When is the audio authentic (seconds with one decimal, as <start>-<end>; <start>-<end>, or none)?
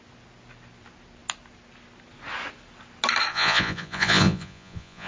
0.0-3.3